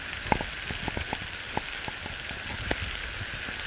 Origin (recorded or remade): recorded